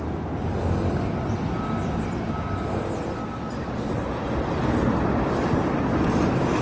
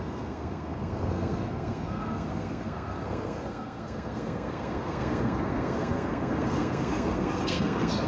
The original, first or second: first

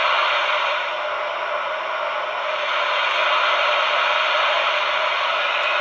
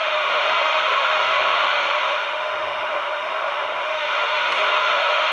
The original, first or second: first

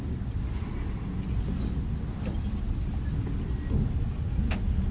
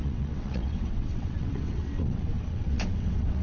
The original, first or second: first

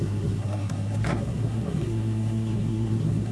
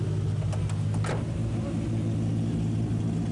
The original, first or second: second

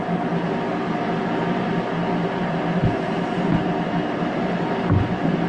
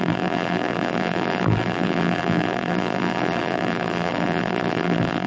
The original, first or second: first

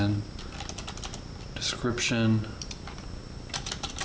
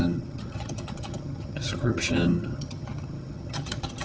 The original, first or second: first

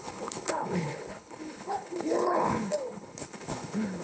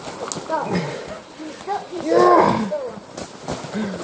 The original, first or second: second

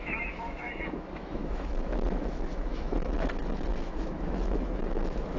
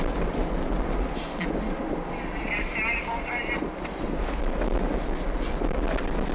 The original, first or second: second